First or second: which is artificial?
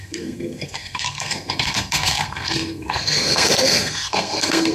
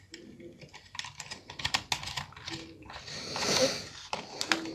first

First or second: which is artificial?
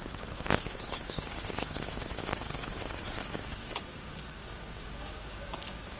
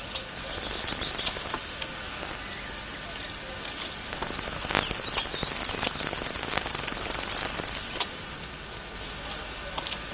first